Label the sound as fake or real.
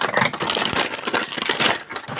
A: real